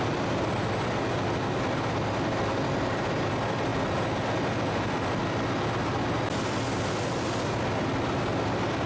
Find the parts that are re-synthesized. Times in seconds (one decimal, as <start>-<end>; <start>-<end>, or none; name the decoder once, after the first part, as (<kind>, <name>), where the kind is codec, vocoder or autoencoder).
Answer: none